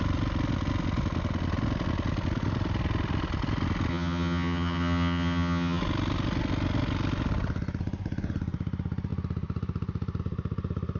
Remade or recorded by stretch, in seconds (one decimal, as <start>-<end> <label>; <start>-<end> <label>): 0.0-3.9 recorded; 3.9-5.8 remade; 5.8-11.0 recorded